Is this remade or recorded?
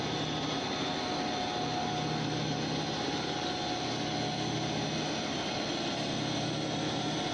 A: recorded